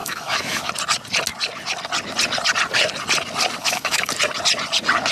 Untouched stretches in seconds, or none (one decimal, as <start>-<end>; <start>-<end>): 0.7-3.6; 4.1-5.1